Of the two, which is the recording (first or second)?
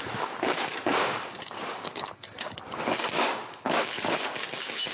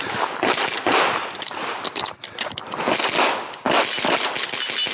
second